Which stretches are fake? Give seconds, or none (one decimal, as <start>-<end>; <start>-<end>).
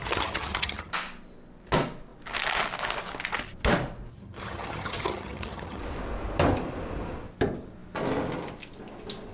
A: 0.0-0.9; 4.1-5.8